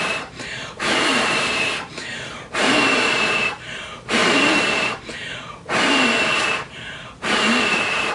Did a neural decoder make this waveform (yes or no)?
yes